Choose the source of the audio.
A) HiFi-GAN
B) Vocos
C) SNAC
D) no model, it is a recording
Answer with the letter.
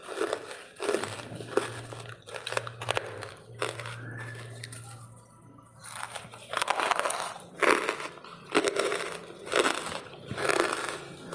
D